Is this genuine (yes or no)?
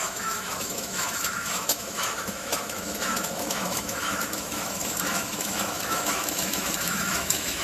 no